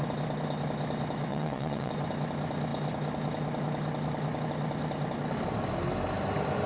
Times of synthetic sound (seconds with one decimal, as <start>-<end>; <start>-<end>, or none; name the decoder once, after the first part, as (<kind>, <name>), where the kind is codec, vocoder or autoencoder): 1.3-1.9 (vocoder, WaveNeXt)